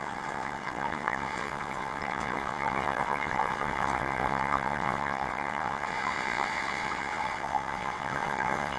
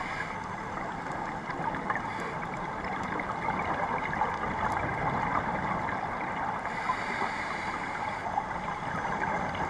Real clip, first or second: second